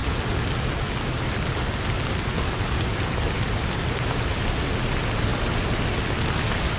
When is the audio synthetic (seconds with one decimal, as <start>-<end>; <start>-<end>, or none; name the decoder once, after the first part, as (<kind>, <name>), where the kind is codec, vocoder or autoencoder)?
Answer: none